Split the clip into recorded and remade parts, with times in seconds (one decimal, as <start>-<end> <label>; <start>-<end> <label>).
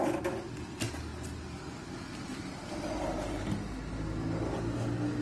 0.0-5.2 recorded